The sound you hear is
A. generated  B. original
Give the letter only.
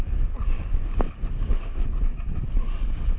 B